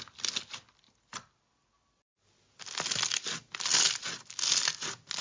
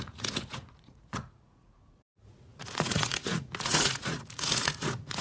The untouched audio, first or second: first